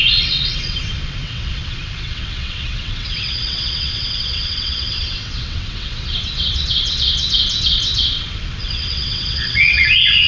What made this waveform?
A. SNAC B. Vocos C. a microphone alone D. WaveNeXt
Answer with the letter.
D